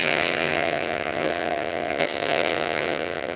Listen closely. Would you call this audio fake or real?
fake